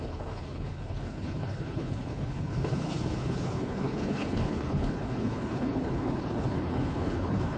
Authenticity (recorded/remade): remade